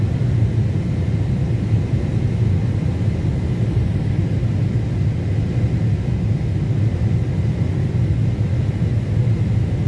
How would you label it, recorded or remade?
recorded